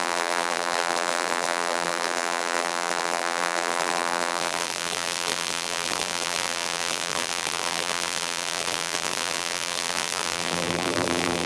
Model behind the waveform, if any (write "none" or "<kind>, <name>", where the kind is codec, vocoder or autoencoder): vocoder, BigVGAN v2